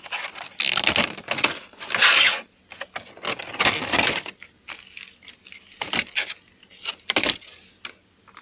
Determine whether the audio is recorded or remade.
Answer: recorded